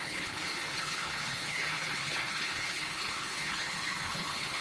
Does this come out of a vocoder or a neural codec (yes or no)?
yes